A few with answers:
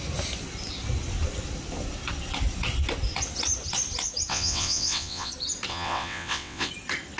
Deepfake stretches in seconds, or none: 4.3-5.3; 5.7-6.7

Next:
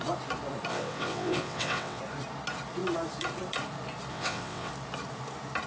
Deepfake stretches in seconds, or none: 0.7-2.0; 4.1-4.7

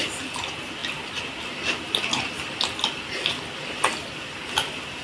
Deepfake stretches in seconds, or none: none

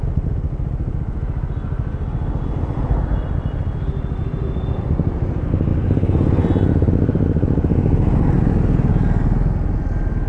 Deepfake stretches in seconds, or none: none

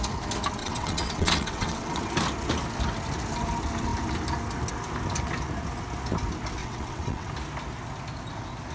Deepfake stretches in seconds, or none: 0.6-2.0; 6.6-7.3

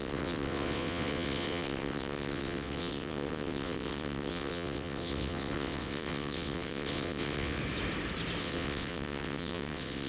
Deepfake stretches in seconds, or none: 0.0-7.6; 8.4-10.1

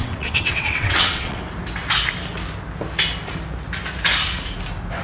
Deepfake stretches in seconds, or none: 0.0-1.4